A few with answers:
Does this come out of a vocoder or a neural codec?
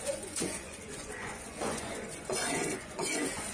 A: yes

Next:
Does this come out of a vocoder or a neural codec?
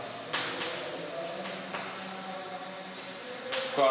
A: no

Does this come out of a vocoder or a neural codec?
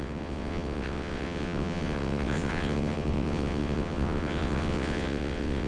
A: yes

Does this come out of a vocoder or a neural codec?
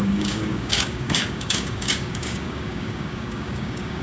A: yes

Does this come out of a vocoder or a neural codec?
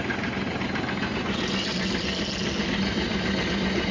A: no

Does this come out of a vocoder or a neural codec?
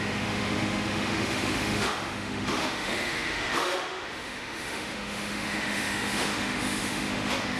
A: yes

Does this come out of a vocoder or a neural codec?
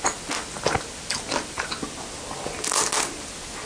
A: no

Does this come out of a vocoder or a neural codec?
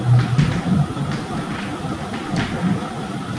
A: no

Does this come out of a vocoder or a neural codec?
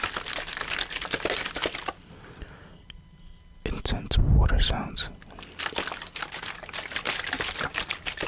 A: no